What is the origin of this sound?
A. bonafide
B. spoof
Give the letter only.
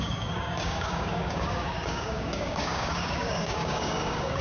B